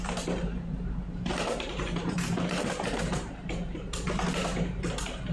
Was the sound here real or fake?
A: fake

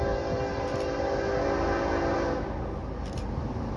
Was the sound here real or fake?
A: real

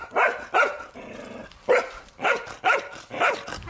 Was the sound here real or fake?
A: fake